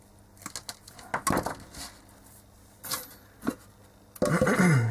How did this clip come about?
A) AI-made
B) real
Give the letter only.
B